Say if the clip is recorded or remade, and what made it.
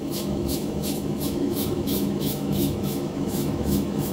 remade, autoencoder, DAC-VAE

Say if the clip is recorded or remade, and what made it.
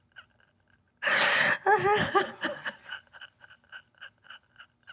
recorded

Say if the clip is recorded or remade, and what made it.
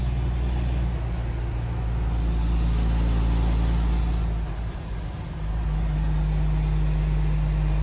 recorded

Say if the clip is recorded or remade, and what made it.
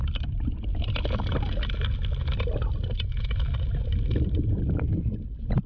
recorded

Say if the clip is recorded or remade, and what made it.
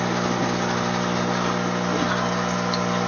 recorded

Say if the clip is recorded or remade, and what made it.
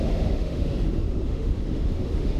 remade, autoencoder, DAC-VAE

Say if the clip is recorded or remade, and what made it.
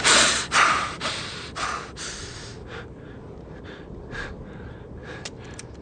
recorded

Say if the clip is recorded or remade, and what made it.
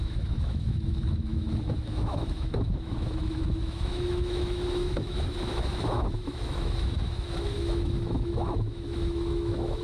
remade, autoencoder, DAC-VAE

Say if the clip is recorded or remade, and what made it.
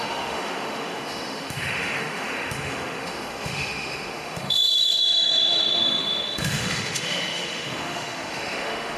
remade, autoencoder, DAC-VAE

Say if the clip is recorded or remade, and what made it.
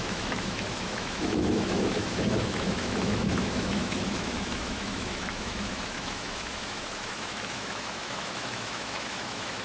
remade, autoencoder, DAC-VAE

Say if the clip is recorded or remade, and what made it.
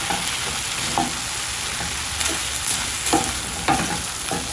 recorded